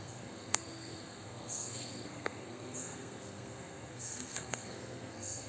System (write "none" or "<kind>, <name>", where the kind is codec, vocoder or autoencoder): codec, SNAC